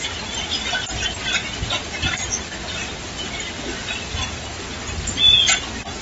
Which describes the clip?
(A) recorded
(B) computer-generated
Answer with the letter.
A